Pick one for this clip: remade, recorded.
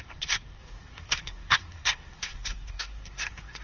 remade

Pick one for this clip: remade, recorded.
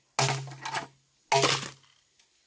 recorded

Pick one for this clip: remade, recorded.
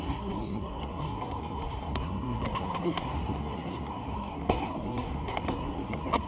remade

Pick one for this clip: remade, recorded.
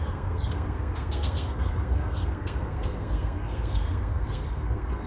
remade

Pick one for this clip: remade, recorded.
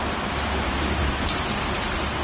recorded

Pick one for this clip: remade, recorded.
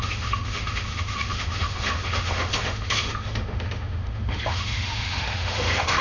remade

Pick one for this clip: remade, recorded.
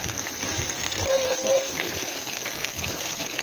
remade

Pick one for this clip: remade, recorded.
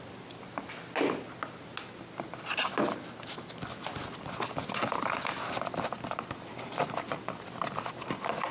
recorded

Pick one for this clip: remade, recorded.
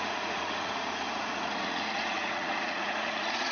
remade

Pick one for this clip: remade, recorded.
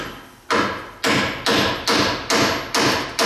recorded